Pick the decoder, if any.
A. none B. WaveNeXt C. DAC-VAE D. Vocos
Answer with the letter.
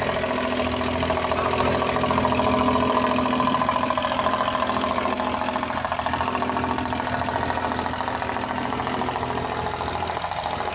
A